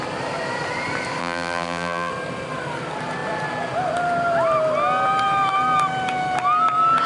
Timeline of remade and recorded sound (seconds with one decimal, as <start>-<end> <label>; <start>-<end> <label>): 0.0-1.2 recorded; 1.2-2.1 remade; 2.1-7.1 recorded